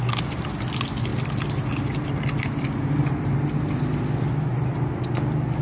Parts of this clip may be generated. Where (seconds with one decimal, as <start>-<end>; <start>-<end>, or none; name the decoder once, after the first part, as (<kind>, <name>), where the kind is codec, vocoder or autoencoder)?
none